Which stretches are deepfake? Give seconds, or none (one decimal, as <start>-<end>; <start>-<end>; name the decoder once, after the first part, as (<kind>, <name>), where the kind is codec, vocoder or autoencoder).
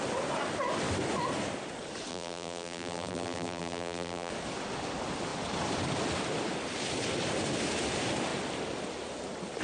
2.1-4.3 (vocoder, BigVGAN v2)